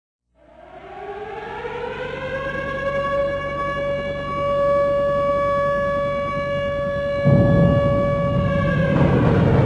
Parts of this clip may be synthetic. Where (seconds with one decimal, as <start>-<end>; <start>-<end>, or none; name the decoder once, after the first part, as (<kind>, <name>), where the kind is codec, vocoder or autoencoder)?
none